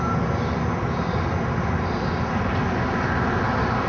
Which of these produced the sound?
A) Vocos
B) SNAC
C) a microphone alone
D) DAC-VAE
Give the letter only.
C